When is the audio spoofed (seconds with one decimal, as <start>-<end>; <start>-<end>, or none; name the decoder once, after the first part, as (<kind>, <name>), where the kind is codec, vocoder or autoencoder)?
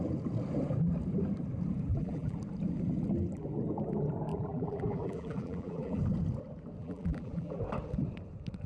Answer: 1.9-2.4 (vocoder, BigVGAN v2); 4.3-6.0; 6.8-7.6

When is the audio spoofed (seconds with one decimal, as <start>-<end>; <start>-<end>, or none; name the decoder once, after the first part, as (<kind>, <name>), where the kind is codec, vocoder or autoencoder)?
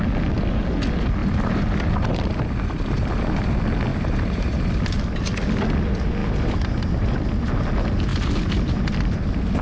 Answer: 1.2-3.4 (vocoder, BigVGAN v2); 3.9-4.7; 6.2-7.5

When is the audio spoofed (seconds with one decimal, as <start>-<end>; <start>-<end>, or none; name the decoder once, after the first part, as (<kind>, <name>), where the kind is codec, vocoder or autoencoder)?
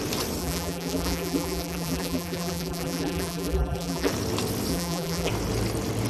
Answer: 0.4-4.1 (vocoder, BigVGAN v2); 4.7-5.3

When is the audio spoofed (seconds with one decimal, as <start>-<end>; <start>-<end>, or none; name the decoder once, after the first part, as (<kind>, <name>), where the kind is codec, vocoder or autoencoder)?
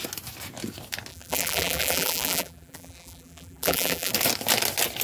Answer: 1.1-4.1 (vocoder, BigVGAN v2)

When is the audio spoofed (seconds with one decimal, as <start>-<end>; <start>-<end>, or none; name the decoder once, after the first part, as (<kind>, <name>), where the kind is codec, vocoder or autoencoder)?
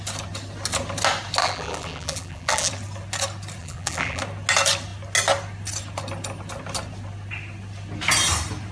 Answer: 1.4-2.7 (vocoder, BigVGAN v2); 3.6-4.2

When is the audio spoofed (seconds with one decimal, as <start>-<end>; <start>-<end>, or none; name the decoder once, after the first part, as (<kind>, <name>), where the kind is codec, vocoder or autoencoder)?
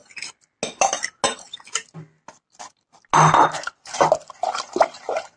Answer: none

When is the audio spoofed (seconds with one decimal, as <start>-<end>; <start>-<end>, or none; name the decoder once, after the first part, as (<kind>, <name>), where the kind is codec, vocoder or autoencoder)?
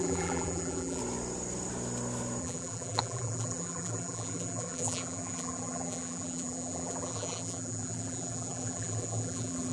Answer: 0.0-1.0 (vocoder, BigVGAN v2); 2.4-9.7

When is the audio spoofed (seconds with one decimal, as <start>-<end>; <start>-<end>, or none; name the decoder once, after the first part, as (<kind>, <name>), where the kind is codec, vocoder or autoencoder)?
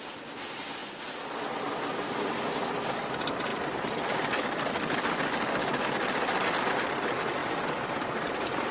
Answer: 3.5-4.7 (vocoder, BigVGAN v2); 7.4-8.7